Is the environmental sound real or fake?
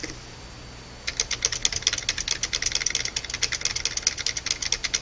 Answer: real